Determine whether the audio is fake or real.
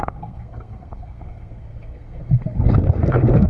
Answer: fake